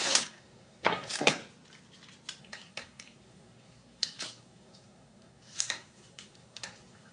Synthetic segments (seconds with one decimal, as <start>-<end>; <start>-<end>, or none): 0.0-1.4; 2.4-7.1